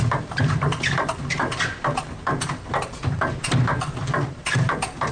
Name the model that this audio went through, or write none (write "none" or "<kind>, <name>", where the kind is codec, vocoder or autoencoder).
none